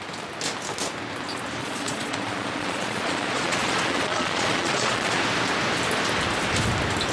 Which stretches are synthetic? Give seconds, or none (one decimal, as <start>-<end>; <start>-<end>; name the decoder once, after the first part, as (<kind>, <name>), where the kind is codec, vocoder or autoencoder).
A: 1.6-5.2 (vocoder, Vocos)